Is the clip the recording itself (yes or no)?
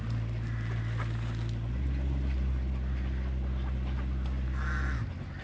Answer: yes